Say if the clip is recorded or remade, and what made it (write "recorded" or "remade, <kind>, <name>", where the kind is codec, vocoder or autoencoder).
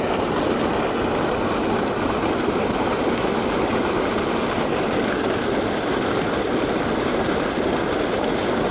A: recorded